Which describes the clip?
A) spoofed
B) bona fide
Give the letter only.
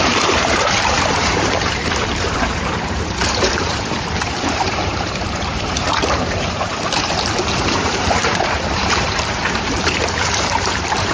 A